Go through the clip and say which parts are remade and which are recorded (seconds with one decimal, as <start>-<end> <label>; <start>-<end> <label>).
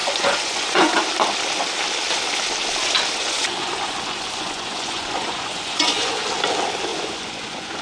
0.0-1.0 remade; 1.0-3.2 recorded; 3.2-6.3 remade; 6.3-6.9 recorded; 6.9-7.8 remade